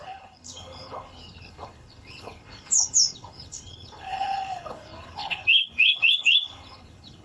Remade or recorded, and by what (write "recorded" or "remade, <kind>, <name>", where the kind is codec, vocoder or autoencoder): remade, codec, HILCodec